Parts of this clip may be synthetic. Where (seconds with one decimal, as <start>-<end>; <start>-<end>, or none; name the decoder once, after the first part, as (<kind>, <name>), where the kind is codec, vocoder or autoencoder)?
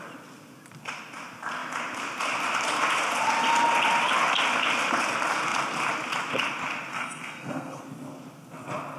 6.9-7.8 (codec, SNAC)